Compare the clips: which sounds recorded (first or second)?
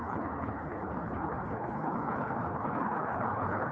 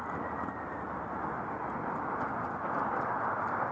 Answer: second